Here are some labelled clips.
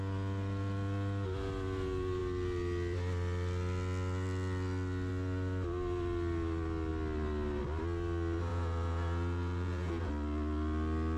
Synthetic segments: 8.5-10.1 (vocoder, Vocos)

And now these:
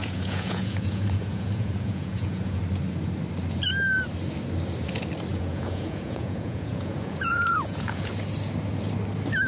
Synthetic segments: 0.0-2.6 (vocoder, Vocos); 5.3-8.1

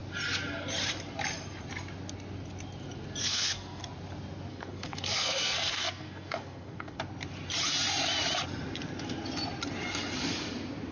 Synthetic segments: 3.2-3.8 (codec, SNAC); 4.5-7.0

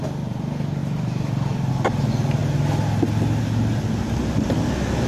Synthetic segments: none

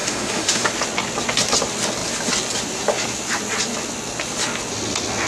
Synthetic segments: 0.0-0.7 (autoencoder, DAC-VAE)

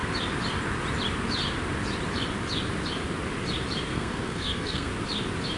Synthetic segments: 3.9-4.9 (codec, SNAC)

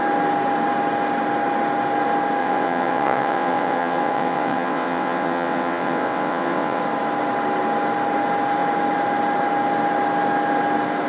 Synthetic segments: 2.4-6.8 (vocoder, WaveNeXt)